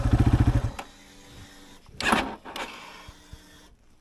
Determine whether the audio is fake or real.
real